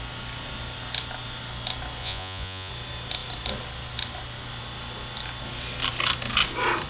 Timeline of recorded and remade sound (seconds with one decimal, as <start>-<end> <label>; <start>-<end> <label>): 0.0-2.0 recorded; 2.0-2.7 remade; 2.7-6.9 recorded